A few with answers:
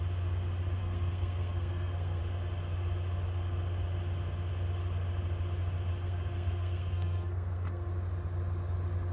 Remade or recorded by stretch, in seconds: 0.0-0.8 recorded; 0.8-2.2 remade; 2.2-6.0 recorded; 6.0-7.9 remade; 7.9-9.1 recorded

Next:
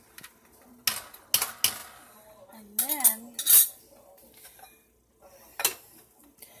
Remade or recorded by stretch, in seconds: 0.0-6.6 recorded